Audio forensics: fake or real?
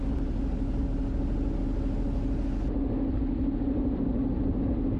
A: real